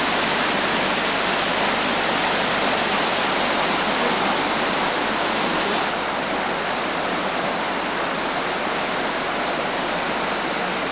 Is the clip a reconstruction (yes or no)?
no